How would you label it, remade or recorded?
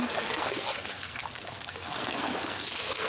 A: remade